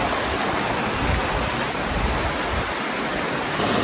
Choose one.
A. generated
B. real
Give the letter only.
B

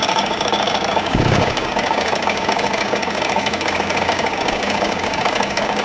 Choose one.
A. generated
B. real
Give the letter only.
A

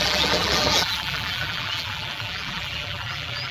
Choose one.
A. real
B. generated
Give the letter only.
B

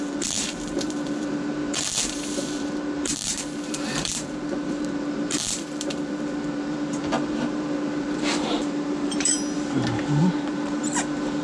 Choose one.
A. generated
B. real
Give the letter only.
A